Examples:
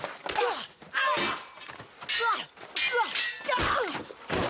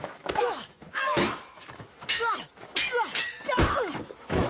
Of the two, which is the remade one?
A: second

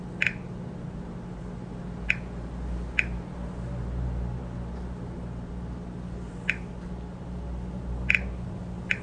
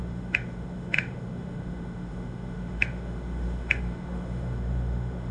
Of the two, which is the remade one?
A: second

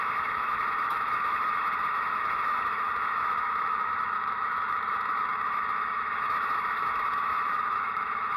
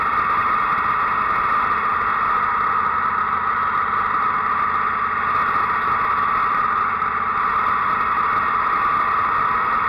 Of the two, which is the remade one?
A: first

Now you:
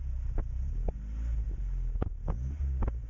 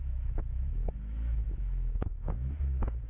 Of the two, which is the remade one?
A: second